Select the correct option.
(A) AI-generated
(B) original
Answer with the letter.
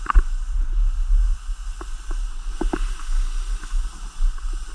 B